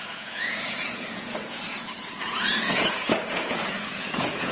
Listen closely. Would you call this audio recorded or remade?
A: remade